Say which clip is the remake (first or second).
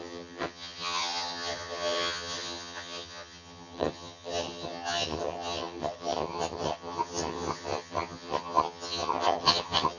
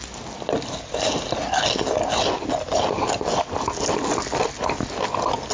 first